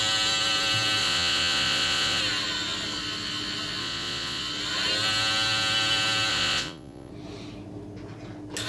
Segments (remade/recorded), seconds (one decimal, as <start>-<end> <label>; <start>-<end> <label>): 0.0-1.0 recorded; 1.0-2.2 remade; 2.2-3.8 recorded; 3.8-4.4 remade; 4.4-6.3 recorded; 6.3-7.1 remade; 7.1-8.7 recorded

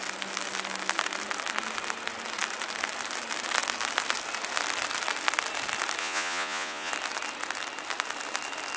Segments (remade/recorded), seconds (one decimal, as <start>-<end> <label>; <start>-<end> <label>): 0.0-6.0 recorded; 6.0-6.9 remade; 6.9-8.8 recorded